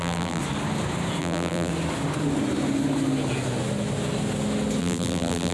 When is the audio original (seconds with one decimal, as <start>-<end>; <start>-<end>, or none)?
0.4-1.2; 1.7-4.8